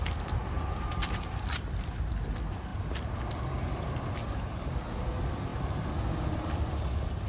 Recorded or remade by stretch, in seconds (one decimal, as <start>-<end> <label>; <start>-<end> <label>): 0.0-5.5 remade; 5.5-6.3 recorded; 6.3-7.3 remade